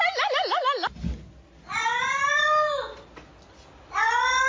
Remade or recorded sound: recorded